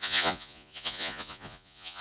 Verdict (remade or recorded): remade